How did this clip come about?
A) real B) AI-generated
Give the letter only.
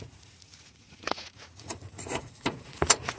B